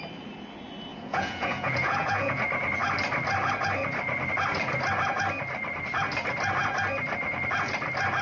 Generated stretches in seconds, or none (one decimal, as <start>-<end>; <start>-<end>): 0.9-2.4